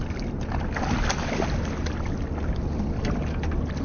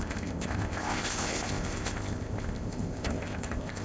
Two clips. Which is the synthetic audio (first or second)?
second